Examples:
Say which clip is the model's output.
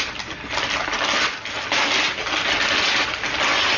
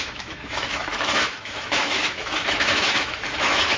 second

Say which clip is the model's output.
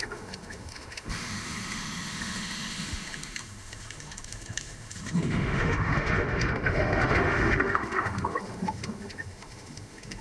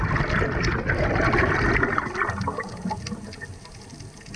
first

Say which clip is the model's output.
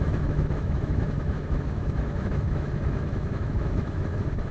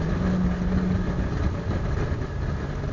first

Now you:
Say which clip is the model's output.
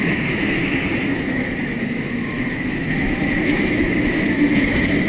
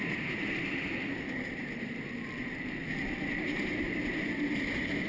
first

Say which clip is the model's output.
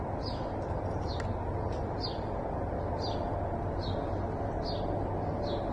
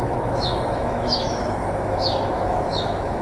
second